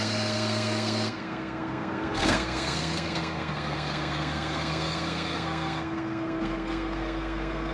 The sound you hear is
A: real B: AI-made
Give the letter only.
B